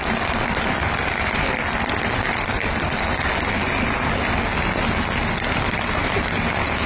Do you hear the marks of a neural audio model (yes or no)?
no